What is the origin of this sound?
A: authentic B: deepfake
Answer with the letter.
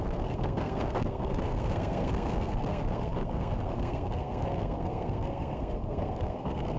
B